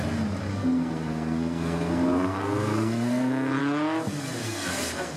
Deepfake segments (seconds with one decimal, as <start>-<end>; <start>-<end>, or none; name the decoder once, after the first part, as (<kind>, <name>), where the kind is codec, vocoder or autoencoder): 0.5-3.6 (codec, SNAC); 4.4-5.2